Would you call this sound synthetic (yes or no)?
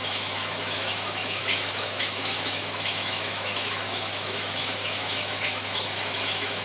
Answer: yes